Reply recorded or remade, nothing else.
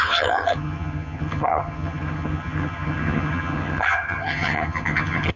remade